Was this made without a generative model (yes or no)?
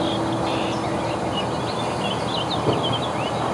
yes